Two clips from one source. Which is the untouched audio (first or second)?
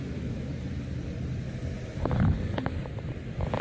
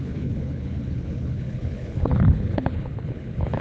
first